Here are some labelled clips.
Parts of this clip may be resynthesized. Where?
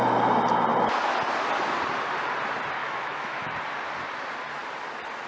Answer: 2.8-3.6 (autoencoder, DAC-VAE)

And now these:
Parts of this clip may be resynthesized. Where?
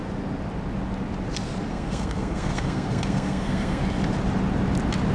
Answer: 1.7-3.8 (codec, SNAC)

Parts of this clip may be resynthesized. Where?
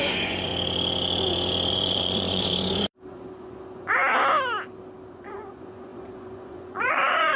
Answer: 0.0-0.5 (vocoder, Vocos); 1.7-2.5; 3.1-4.0; 5.1-7.4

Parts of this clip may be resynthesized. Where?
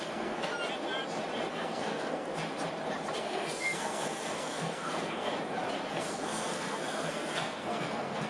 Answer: 0.0-0.5 (codec, SNAC); 1.5-2.3; 3.2-5.3; 5.9-8.3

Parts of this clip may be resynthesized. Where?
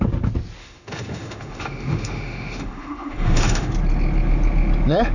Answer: 0.6-3.7 (autoencoder, DAC-VAE)